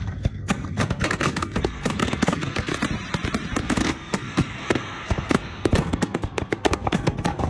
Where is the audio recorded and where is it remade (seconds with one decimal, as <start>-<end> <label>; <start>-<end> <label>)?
0.0-2.7 remade; 2.7-3.6 recorded; 3.6-7.5 remade